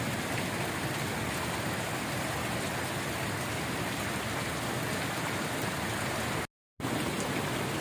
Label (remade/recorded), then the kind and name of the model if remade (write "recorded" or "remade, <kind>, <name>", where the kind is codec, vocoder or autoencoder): recorded